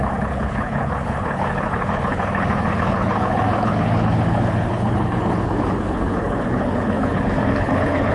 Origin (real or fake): fake